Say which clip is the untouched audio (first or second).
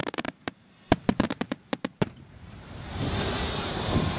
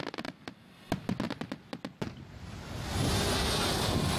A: second